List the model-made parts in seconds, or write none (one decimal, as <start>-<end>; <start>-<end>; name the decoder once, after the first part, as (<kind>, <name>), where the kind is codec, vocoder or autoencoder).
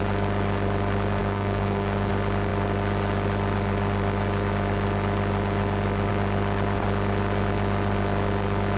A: 1.2-2.1 (codec, DAC)